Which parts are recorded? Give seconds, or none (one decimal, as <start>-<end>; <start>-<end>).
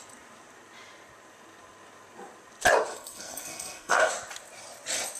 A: 0.0-2.9; 4.1-5.2